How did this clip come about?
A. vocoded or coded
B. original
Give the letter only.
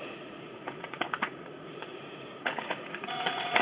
A